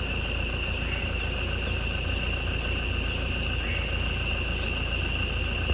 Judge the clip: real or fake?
real